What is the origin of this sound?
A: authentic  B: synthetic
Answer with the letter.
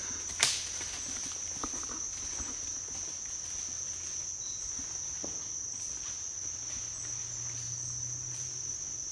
A